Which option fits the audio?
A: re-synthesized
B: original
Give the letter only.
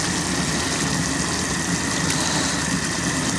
B